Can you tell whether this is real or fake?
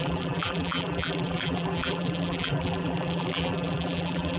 fake